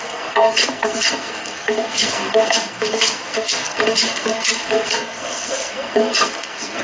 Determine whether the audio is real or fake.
fake